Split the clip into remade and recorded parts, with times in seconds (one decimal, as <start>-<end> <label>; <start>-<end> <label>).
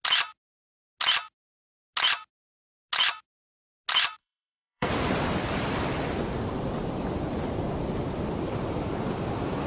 0.0-4.2 recorded; 4.2-4.9 remade; 4.9-9.7 recorded